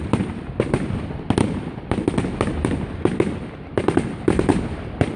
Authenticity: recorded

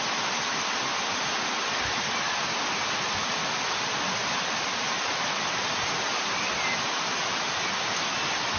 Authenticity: recorded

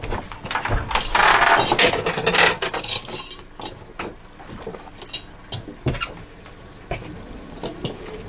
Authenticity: recorded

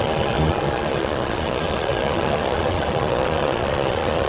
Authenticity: remade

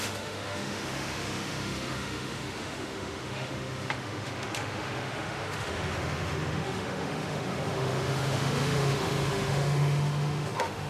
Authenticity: remade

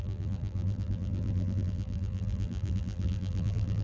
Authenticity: remade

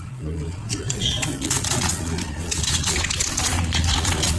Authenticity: remade